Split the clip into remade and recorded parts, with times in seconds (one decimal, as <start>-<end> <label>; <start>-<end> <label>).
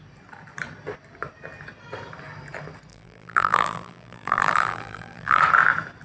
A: 0.0-2.9 recorded; 2.9-5.4 remade; 5.4-6.0 recorded